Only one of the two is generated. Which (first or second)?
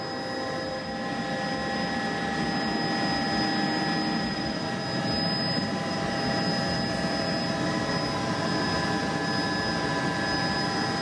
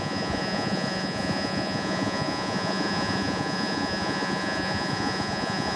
second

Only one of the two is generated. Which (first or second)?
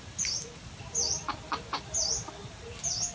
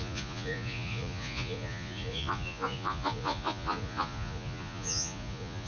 second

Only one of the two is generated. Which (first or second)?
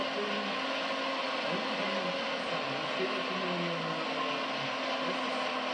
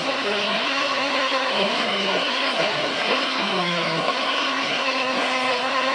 second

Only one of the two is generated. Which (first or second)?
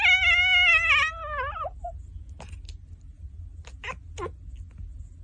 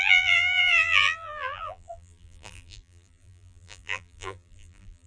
second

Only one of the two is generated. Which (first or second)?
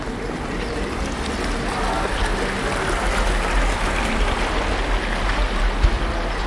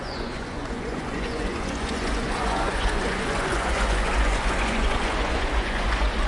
second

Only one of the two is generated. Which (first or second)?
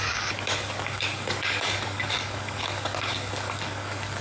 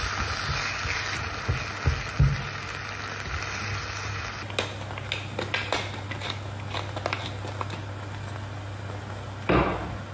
first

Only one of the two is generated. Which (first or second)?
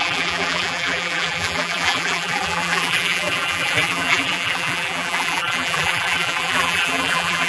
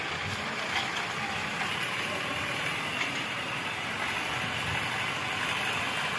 first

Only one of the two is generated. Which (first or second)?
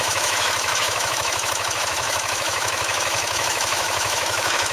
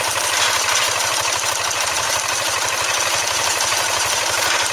first